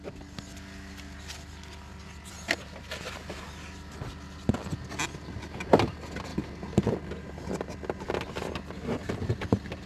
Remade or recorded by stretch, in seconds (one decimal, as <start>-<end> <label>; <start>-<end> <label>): 0.0-9.9 recorded